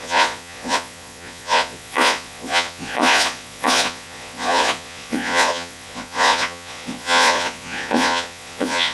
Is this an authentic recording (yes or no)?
no